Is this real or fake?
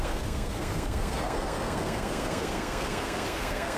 fake